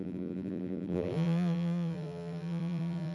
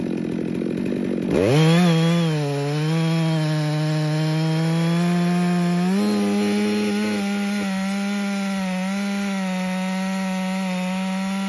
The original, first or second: second